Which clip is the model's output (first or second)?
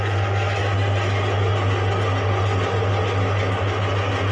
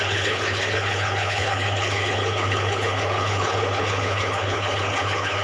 second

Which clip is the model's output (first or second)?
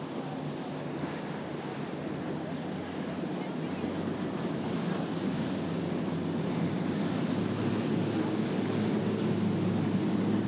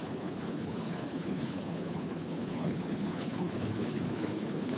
second